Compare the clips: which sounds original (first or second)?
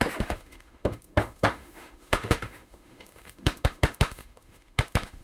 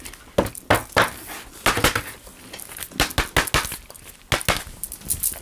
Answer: second